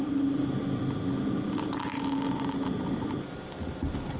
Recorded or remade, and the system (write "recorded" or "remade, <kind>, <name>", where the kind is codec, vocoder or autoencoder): recorded